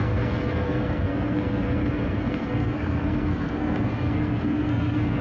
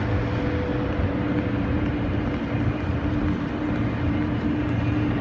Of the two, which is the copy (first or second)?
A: first